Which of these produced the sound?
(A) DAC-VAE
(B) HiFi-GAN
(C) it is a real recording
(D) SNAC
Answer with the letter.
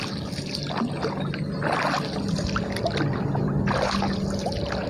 C